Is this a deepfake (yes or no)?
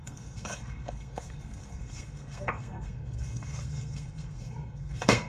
yes